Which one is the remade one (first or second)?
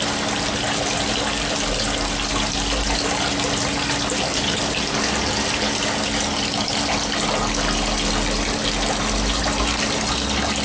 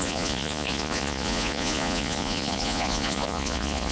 second